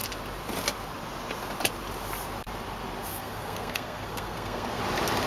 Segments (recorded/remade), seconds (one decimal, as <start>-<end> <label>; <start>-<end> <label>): 0.0-3.1 recorded; 3.1-4.8 remade; 4.8-5.3 recorded

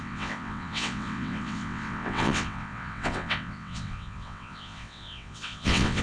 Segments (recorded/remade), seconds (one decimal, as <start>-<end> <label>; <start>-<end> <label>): 0.0-6.0 remade